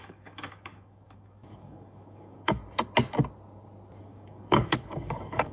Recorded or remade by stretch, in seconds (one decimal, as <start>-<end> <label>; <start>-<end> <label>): 0.0-2.6 remade; 2.6-4.0 recorded; 4.0-5.5 remade